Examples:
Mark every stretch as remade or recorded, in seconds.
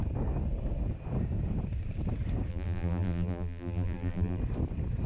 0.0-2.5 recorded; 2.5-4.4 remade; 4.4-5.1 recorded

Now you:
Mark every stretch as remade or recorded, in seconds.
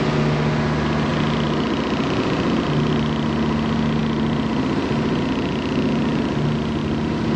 0.0-6.8 recorded; 6.8-7.4 remade